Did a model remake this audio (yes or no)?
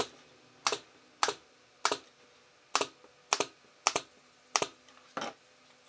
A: no